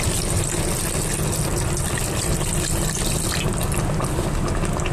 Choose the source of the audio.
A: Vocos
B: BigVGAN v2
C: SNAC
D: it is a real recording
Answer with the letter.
D